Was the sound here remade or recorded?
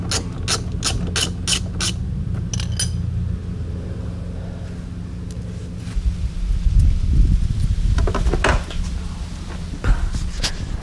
recorded